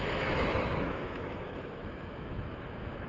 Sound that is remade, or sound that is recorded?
remade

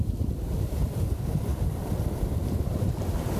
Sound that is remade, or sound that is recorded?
recorded